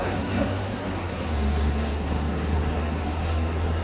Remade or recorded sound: remade